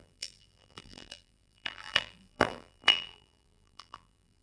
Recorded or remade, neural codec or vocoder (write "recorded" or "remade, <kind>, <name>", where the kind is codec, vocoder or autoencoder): remade, vocoder, BigVGAN v2